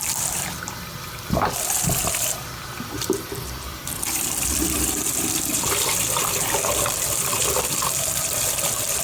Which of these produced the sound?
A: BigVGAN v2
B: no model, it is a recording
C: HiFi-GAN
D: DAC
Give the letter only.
A